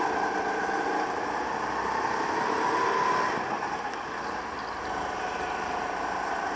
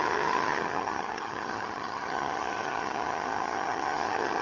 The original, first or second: first